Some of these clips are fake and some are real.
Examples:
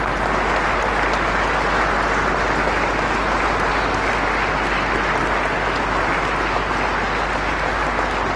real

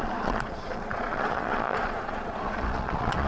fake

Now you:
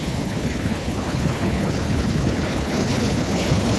fake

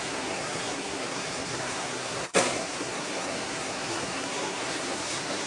fake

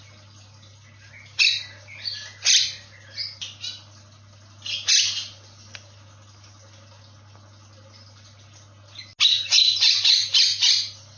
real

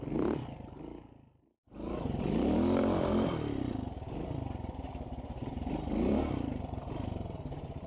fake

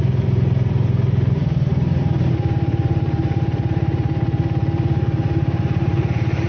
fake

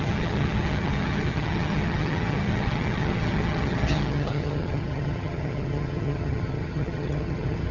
fake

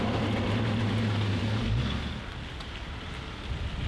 real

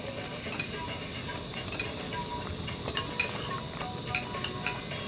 real